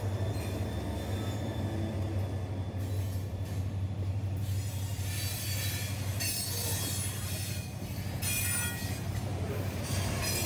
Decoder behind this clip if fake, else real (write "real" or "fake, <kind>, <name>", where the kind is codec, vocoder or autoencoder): real